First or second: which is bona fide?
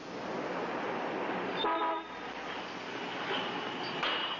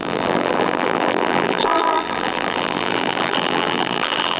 first